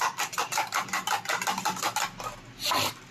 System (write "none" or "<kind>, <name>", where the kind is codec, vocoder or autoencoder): none